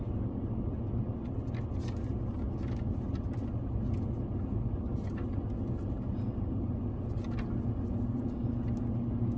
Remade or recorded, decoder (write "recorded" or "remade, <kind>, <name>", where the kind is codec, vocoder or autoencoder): recorded